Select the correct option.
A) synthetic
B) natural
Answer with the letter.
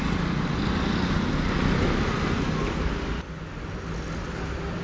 B